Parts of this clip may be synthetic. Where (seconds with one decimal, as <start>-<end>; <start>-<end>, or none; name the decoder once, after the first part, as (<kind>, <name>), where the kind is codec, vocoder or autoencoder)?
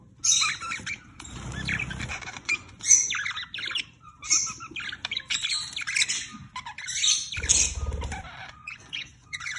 2.1-2.8 (vocoder, Vocos); 8.4-9.6